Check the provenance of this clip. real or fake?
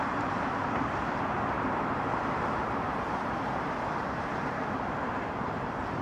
fake